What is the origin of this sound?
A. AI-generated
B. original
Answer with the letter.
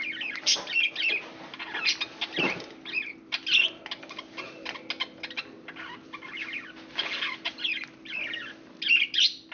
B